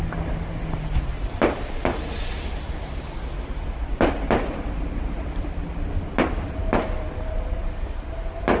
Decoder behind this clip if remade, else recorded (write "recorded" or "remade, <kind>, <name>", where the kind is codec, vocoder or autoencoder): recorded